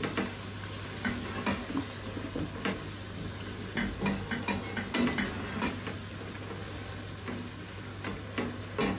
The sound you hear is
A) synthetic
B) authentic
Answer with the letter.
B